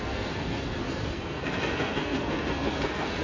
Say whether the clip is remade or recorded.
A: remade